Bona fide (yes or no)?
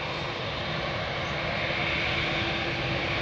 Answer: yes